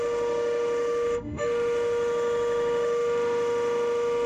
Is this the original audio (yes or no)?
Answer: no